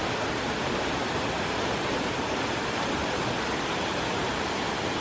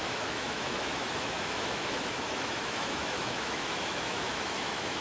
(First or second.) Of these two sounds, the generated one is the second